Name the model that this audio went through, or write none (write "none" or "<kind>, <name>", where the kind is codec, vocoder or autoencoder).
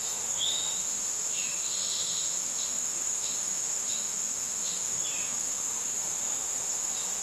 autoencoder, DAC-VAE